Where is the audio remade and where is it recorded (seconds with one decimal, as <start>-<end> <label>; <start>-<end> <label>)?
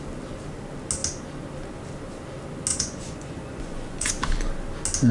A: 0.0-2.7 recorded; 2.7-4.1 remade; 4.1-5.1 recorded